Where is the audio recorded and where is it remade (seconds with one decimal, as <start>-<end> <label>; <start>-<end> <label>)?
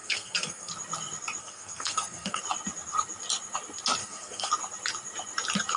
0.0-0.7 remade; 0.7-1.4 recorded; 1.4-2.4 remade; 2.4-4.0 recorded; 4.0-4.5 remade; 4.5-5.8 recorded